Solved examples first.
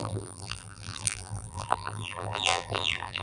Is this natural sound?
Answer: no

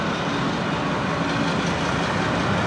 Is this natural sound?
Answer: yes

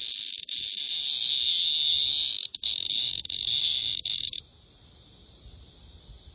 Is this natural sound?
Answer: yes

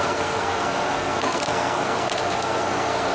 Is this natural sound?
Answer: no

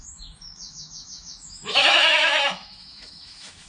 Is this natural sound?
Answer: no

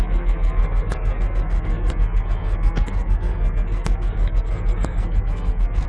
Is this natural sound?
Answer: no